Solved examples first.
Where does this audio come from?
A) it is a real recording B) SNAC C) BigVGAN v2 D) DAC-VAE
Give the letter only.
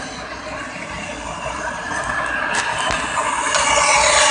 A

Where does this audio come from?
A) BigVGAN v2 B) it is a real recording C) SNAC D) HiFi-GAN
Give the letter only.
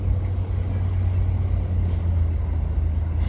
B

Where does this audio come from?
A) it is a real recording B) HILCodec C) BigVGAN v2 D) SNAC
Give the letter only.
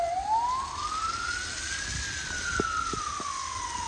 A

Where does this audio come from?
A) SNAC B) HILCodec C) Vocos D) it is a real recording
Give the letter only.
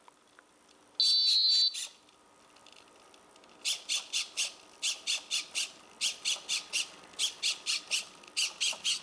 D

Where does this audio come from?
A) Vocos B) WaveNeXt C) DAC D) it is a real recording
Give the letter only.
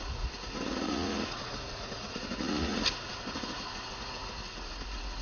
A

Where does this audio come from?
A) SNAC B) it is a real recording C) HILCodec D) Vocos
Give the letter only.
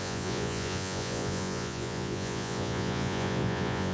D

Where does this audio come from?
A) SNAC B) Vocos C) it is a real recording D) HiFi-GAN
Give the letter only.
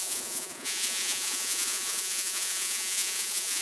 B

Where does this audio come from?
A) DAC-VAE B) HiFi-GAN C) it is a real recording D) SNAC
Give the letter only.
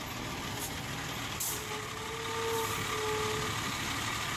C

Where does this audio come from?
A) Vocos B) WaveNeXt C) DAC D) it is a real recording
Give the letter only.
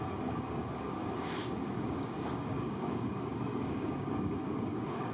C